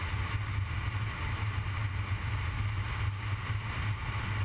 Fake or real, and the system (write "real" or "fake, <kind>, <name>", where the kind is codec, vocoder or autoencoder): real